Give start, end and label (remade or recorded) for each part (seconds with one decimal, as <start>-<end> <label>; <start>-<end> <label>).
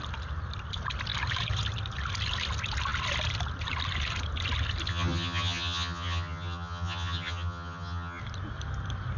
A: 0.0-4.9 recorded; 4.9-8.2 remade; 8.2-9.2 recorded